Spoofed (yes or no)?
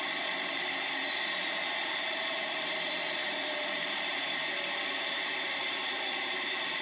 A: yes